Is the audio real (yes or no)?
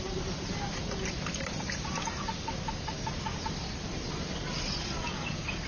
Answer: yes